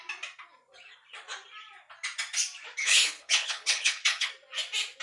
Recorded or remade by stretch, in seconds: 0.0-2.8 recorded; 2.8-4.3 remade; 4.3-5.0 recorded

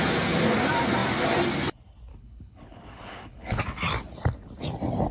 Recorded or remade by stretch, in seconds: 0.0-2.1 recorded; 2.1-3.6 remade; 3.6-5.1 recorded